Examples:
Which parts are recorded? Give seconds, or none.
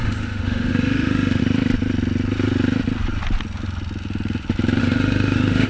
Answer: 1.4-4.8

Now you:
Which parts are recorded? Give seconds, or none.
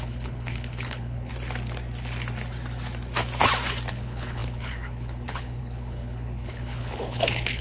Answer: 1.3-3.9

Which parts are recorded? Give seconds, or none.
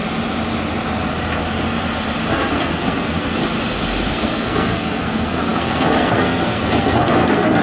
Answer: 0.0-2.3; 3.4-4.1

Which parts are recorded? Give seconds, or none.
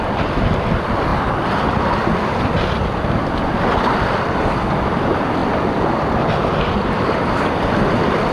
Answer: 0.0-8.3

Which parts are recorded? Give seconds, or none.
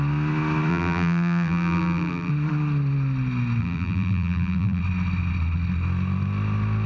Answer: 0.0-0.7; 2.3-3.6; 4.8-6.9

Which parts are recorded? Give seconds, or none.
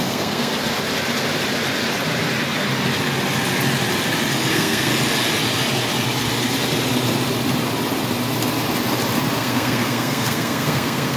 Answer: 0.5-4.5; 4.9-9.4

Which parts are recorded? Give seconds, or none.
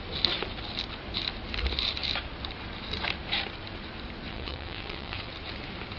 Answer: 0.0-4.3; 5.3-6.0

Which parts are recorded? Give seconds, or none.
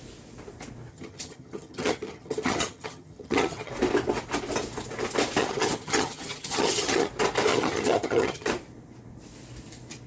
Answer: 0.0-0.9; 3.7-5.4; 7.1-7.5; 8.5-10.1